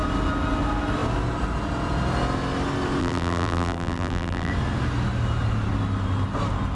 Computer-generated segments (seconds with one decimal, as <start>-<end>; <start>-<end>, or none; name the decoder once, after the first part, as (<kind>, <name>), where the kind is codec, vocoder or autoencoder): 3.0-4.5 (vocoder, BigVGAN v2)